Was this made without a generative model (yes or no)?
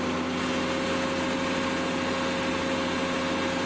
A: yes